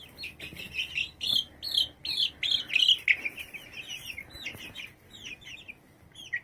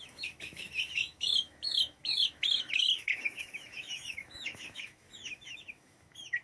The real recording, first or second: first